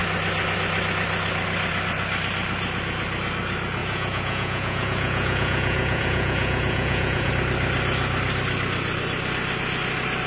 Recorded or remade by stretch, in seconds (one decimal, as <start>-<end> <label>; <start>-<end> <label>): 0.0-3.8 recorded; 3.8-7.3 remade; 7.3-10.3 recorded